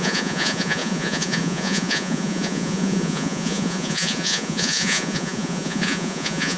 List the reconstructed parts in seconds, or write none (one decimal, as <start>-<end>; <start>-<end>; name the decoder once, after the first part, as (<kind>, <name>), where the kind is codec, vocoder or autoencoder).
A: 0.0-6.6 (vocoder, Vocos)